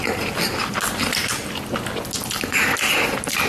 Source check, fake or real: real